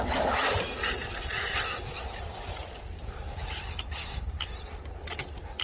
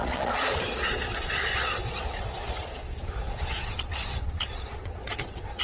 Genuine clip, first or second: first